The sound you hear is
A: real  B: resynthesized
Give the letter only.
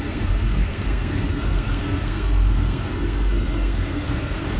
B